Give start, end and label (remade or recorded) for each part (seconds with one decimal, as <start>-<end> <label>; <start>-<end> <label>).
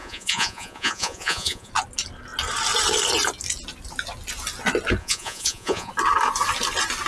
0.0-1.7 remade; 1.7-5.0 recorded; 5.0-5.9 remade; 5.9-7.1 recorded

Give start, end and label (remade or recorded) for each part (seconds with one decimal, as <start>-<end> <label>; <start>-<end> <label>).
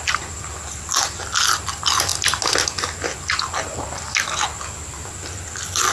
0.0-5.9 recorded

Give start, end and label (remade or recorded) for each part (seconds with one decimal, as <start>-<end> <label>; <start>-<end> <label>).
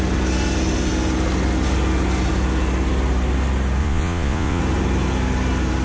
0.0-3.8 recorded; 3.8-4.6 remade; 4.6-5.8 recorded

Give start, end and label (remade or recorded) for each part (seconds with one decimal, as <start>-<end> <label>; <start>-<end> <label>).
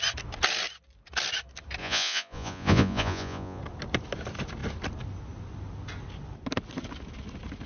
0.0-1.8 recorded; 1.8-3.6 remade; 3.6-7.7 recorded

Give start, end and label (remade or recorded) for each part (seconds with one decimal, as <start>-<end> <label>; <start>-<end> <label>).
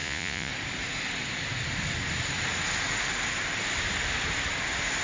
0.0-0.5 remade; 0.5-5.0 recorded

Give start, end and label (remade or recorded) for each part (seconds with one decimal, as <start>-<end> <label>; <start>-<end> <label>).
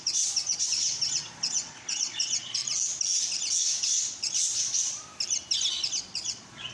0.0-2.6 remade; 2.6-3.6 recorded; 3.6-5.1 remade; 5.1-5.9 recorded; 5.9-6.7 remade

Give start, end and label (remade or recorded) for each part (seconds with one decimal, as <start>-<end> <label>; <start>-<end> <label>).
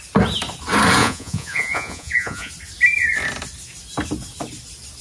0.0-1.0 recorded; 1.0-2.5 remade; 2.5-5.0 recorded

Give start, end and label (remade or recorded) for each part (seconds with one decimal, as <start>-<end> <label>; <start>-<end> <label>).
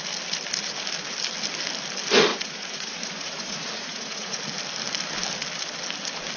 0.0-2.3 recorded; 2.3-4.4 remade; 4.4-6.4 recorded